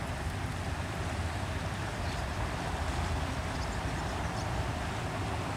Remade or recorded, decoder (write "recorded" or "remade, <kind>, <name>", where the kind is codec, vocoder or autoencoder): remade, vocoder, BigVGAN v2